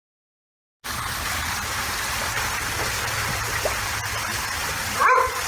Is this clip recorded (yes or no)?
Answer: yes